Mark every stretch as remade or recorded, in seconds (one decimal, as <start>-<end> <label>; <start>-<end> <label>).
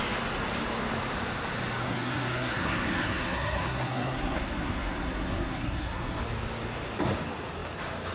0.0-1.8 recorded; 1.8-6.2 remade; 6.2-8.1 recorded